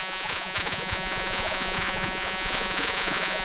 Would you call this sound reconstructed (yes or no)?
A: yes